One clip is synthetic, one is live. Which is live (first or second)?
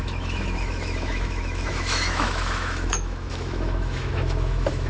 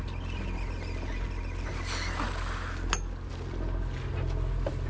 second